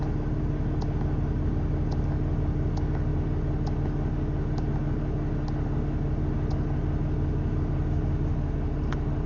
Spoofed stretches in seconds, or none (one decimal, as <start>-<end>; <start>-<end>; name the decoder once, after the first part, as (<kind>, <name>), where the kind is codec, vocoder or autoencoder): none